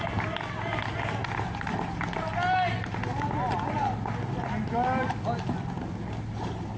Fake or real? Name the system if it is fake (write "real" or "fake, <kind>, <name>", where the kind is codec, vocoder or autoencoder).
real